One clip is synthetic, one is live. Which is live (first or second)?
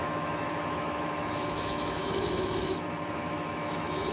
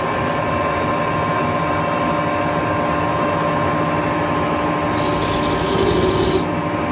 second